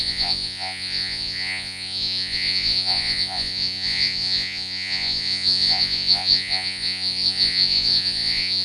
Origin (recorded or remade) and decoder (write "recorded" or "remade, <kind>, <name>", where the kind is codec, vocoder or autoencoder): remade, vocoder, Vocos